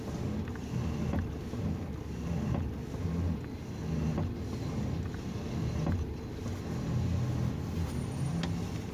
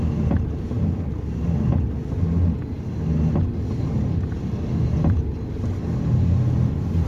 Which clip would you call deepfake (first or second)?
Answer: second